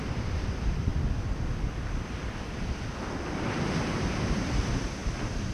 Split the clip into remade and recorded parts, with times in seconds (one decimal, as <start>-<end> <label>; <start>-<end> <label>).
0.0-0.9 remade; 0.9-4.2 recorded; 4.2-5.5 remade